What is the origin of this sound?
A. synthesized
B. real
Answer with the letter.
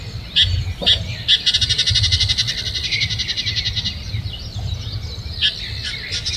B